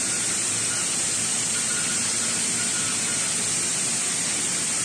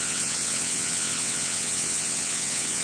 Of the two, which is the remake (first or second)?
second